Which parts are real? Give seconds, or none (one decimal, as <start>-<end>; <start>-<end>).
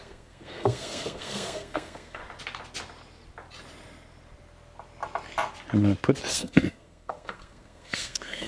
2.2-6.3